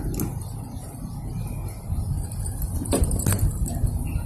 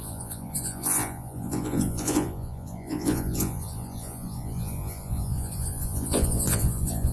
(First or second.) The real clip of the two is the first